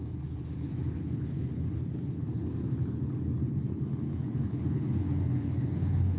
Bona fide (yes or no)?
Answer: no